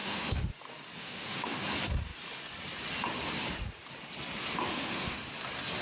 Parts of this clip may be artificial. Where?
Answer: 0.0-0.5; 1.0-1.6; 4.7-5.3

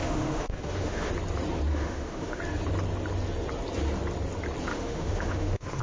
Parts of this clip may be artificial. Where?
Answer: 0.0-1.1; 1.7-2.4; 4.7-5.8

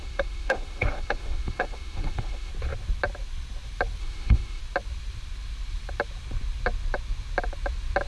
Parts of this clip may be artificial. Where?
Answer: 0.0-2.5; 4.0-4.6

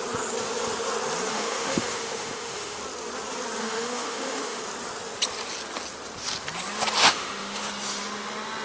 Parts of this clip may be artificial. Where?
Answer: 1.3-2.8; 3.6-4.6; 7.0-7.7

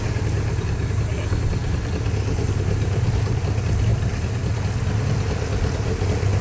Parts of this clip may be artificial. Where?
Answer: none

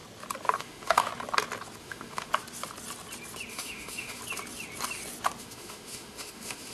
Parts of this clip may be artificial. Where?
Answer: 0.6-1.1; 1.8-2.3; 3.5-4.2; 5.4-6.7